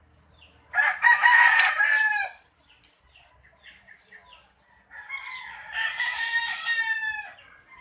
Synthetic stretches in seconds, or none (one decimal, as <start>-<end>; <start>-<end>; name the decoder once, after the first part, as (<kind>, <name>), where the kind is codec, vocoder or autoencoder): 1.2-3.6 (vocoder, BigVGAN v2); 5.6-6.3